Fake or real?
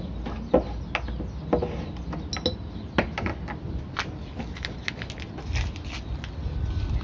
real